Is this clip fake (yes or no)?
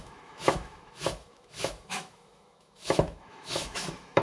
yes